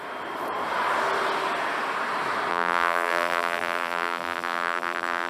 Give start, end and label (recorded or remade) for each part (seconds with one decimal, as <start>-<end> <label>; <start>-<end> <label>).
0.0-2.5 recorded; 2.5-5.3 remade